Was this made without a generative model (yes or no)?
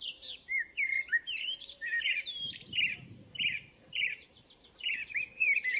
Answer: no